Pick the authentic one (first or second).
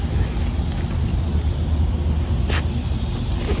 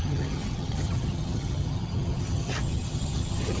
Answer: first